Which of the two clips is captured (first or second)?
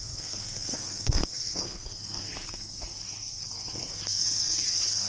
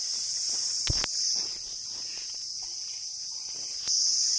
second